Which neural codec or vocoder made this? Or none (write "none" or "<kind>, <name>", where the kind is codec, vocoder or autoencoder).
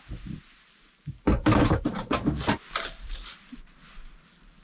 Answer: none